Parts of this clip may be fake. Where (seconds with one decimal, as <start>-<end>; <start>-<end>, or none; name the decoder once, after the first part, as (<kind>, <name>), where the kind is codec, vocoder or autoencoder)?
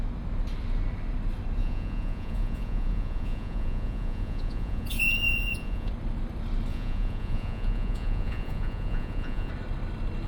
1.6-5.9 (vocoder, Vocos); 6.7-9.5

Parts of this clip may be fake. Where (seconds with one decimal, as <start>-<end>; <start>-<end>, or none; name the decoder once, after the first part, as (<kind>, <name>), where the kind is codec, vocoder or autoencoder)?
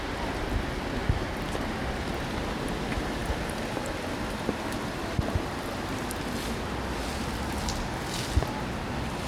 none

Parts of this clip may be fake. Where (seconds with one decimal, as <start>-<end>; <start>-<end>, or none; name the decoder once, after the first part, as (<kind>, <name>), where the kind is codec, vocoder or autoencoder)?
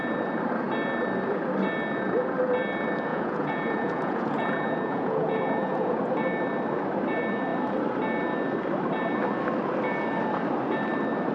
3.1-6.0 (vocoder, Vocos)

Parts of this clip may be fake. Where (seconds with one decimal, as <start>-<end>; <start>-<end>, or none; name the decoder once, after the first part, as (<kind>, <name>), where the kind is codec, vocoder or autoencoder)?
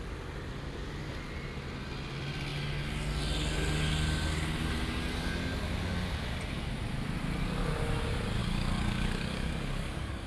8.4-10.3 (codec, DAC)